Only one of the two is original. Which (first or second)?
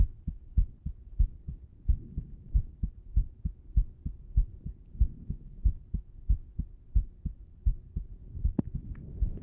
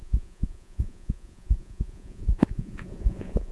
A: first